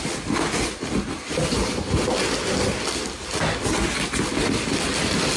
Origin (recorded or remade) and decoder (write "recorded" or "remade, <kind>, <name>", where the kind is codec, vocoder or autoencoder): recorded